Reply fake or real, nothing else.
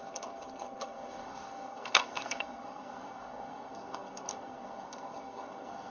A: fake